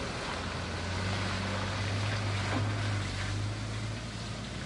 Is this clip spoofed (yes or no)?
no